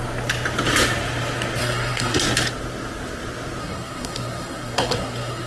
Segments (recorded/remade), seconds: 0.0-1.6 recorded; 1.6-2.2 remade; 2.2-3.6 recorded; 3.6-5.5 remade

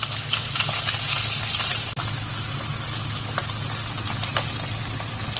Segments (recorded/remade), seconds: 0.0-5.4 recorded

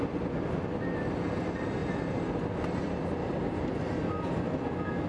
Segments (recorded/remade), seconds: 0.0-5.1 recorded

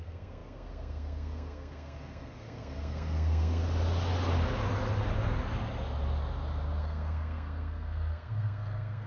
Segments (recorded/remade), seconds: 0.0-3.6 remade; 3.6-6.8 recorded; 6.8-9.1 remade

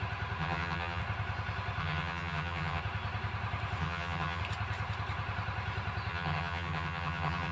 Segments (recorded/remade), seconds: 0.0-0.4 recorded; 0.4-1.0 remade; 1.0-1.8 recorded; 1.8-2.8 remade; 2.8-3.8 recorded; 3.8-4.4 remade; 4.4-6.1 recorded; 6.1-7.5 remade

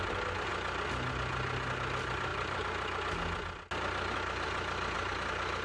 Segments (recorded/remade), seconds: 0.0-5.6 recorded

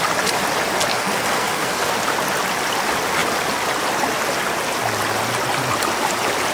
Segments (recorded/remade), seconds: 0.0-0.9 recorded; 0.9-2.0 remade; 2.0-6.5 recorded

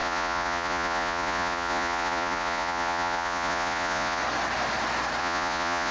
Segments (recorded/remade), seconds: 0.0-4.2 remade; 4.2-5.2 recorded; 5.2-5.9 remade